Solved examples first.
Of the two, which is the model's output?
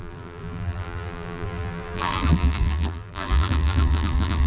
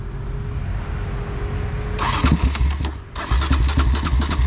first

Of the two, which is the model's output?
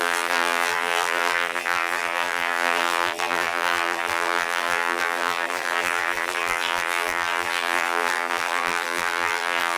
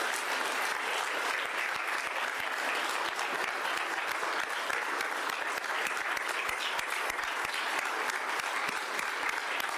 first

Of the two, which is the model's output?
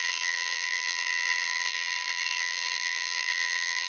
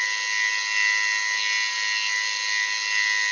first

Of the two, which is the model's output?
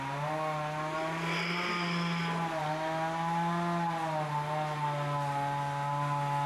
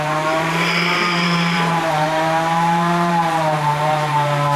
second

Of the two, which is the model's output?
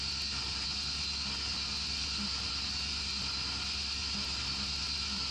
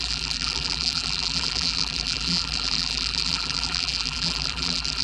second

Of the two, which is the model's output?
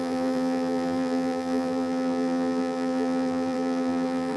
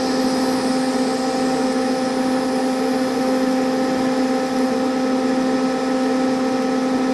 first